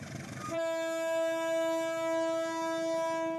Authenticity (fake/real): real